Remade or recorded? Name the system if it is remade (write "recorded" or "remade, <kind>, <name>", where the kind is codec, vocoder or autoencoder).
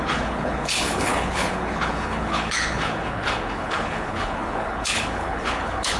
remade, codec, HILCodec